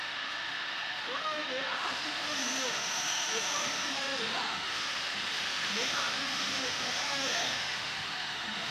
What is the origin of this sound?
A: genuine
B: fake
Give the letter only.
B